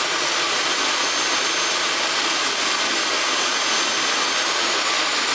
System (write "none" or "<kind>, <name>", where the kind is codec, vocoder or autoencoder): none